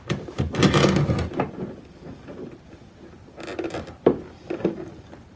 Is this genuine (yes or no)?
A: yes